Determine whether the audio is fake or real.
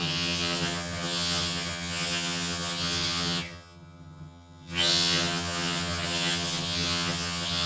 fake